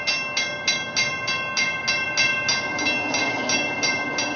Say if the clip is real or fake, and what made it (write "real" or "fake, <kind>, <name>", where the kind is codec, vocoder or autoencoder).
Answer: real